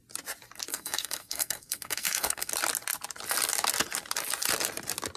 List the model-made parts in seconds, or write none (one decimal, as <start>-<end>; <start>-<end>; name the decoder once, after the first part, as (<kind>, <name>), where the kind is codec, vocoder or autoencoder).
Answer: 0.7-2.5 (codec, SNAC)